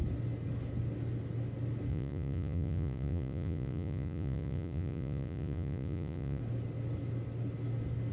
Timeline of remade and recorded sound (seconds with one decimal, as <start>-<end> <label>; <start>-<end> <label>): 0.0-1.9 recorded; 1.9-6.4 remade; 6.4-8.1 recorded